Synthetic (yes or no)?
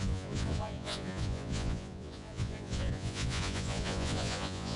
yes